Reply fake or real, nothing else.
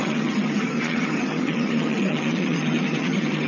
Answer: fake